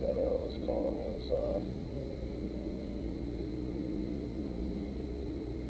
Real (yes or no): no